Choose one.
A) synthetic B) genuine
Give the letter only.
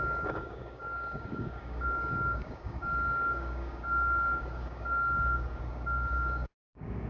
A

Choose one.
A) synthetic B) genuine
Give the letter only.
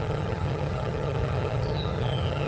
A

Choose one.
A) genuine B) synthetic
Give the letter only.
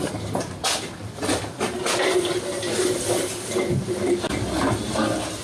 A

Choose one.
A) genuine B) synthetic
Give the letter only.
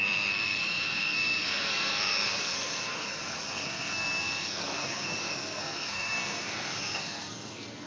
B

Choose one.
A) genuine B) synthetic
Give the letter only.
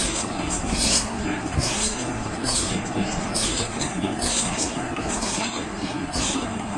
B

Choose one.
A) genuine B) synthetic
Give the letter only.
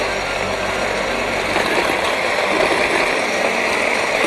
A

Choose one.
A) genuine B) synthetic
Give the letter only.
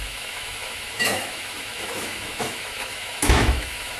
B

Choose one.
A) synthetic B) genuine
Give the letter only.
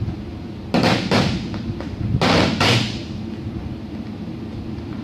B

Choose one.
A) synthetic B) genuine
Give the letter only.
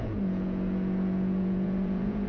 A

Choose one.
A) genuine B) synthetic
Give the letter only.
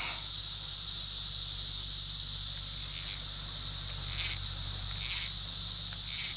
A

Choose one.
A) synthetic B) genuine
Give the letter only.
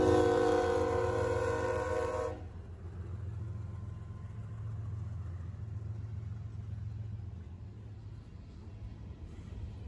B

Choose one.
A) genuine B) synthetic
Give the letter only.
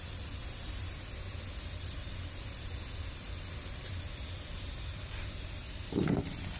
B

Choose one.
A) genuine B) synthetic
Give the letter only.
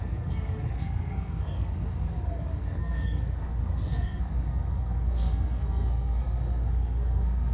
B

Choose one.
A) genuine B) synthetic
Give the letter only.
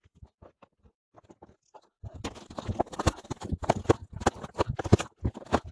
A